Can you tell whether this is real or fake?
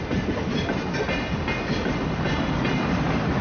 real